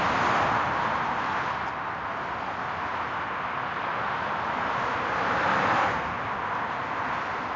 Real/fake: real